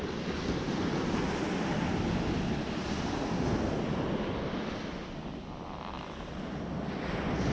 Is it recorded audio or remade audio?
recorded